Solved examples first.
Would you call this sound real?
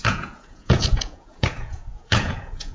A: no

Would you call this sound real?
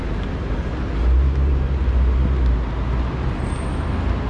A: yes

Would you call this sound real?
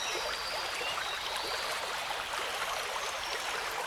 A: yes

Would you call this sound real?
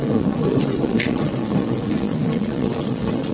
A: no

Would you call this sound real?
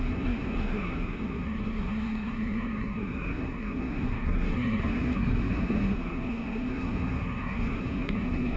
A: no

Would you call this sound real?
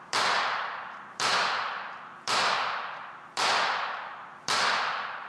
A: no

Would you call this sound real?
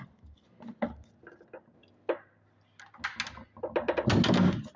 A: yes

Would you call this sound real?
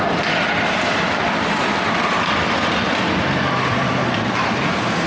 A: yes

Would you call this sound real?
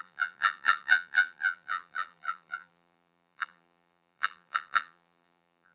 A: no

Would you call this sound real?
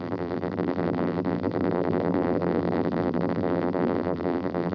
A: no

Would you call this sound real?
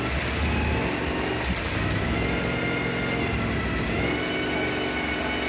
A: yes